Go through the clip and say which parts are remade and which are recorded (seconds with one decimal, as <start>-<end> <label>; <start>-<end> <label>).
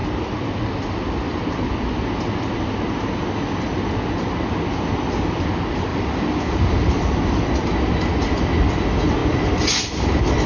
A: 0.0-1.4 remade; 1.4-5.9 recorded; 5.9-7.5 remade; 7.5-10.5 recorded